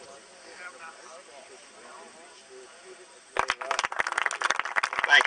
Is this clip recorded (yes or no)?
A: yes